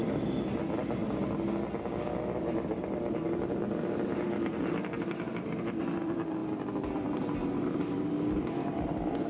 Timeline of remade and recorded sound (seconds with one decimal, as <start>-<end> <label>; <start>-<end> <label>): 0.0-9.3 recorded